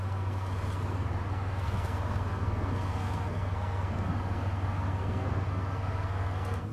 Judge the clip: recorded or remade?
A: remade